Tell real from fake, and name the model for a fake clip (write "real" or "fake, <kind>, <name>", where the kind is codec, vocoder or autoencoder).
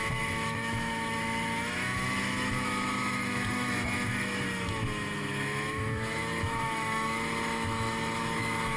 fake, autoencoder, DAC-VAE